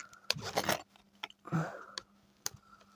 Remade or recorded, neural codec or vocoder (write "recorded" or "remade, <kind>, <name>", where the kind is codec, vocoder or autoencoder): recorded